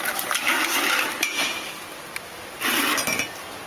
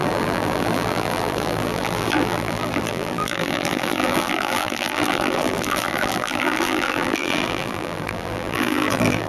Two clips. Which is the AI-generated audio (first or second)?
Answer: second